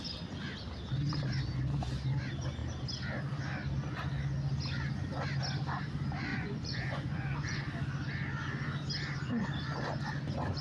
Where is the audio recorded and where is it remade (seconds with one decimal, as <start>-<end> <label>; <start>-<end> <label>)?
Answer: 0.0-6.3 recorded; 6.3-7.6 remade; 7.6-10.6 recorded